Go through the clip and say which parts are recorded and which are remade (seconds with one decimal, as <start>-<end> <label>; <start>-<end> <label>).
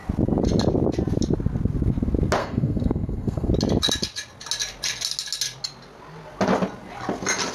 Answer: 0.0-2.4 recorded; 2.4-3.5 remade; 3.5-7.5 recorded